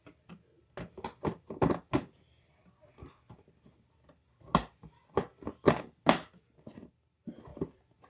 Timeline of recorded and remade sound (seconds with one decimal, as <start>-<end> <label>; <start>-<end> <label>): 0.0-7.5 recorded; 7.5-8.1 remade